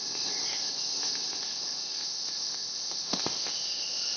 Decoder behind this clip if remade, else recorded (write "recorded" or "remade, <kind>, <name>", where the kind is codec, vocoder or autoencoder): remade, codec, ZipCodec